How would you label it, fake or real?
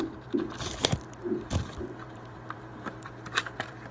fake